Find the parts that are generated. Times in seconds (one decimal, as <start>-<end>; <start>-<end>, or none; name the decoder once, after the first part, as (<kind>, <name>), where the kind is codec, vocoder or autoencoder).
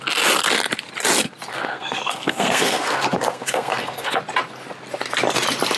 1.5-4.2 (codec, SNAC)